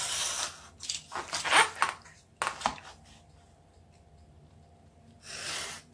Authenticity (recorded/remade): recorded